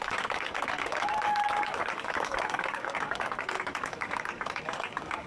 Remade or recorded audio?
remade